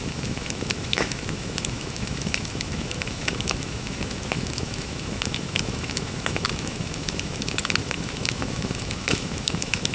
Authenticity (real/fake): fake